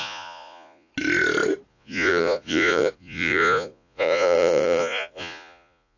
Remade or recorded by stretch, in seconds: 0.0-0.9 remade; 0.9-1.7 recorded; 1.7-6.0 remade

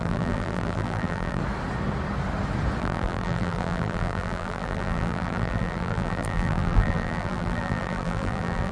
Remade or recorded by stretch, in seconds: 0.0-1.4 remade; 1.4-2.8 recorded; 2.8-8.7 remade

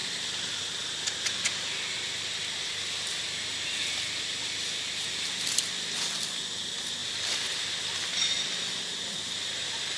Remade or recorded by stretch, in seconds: 0.0-7.0 recorded; 7.0-8.8 remade; 8.8-10.0 recorded

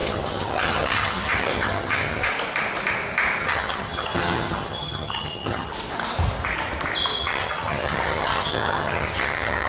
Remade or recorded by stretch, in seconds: 0.0-2.3 remade; 2.3-3.4 recorded; 3.4-5.7 remade; 5.7-7.2 recorded; 7.2-9.7 remade

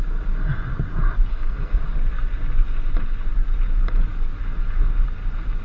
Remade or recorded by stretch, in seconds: 0.0-1.3 recorded; 1.3-1.8 remade; 1.8-5.6 recorded

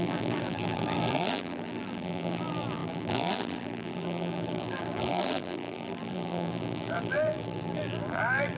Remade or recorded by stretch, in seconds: 0.0-8.6 remade

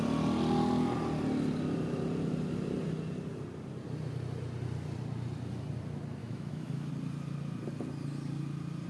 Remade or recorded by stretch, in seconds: 0.0-6.2 recorded; 6.2-6.9 remade; 6.9-8.9 recorded